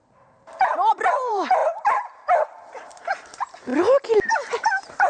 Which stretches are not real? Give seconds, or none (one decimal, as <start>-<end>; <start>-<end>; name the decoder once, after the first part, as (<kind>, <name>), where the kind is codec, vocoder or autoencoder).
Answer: 0.9-3.7 (vocoder, BigVGAN v2); 4.3-5.1